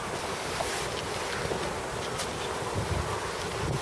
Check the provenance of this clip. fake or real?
real